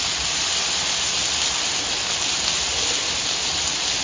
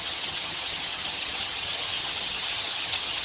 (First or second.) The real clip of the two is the first